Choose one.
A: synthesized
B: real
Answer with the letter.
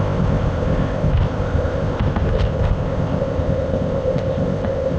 A